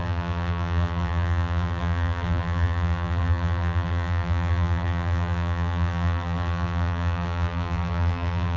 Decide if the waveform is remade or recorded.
remade